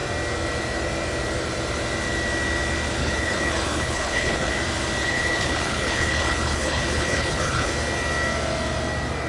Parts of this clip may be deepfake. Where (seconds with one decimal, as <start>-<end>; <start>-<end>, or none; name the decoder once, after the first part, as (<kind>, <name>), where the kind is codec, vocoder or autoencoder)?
3.0-4.5 (codec, HILCodec); 5.0-7.7